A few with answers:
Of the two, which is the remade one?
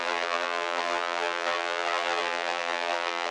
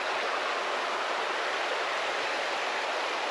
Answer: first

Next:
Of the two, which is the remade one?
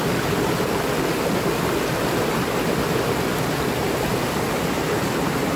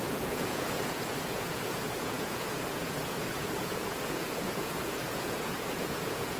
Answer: second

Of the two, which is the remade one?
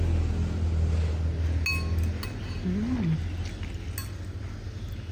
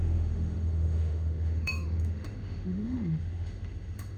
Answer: second